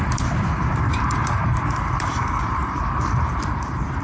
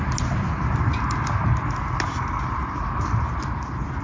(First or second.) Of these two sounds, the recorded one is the second